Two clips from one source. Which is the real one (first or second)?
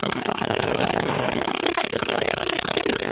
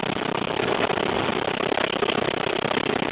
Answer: second